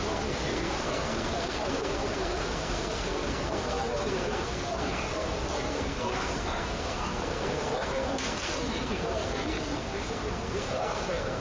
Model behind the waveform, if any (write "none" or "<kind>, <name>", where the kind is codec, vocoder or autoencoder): codec, SNAC